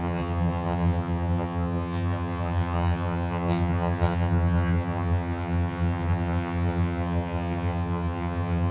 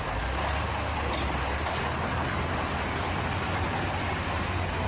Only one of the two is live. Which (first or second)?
second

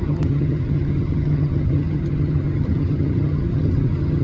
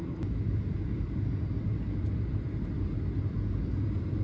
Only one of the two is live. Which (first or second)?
second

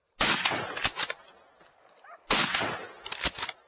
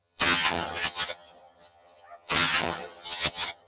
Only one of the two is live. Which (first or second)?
first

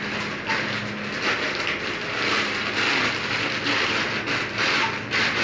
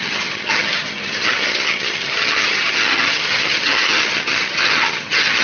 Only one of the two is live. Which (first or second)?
first